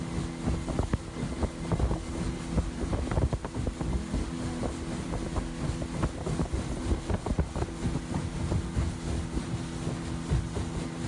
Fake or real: real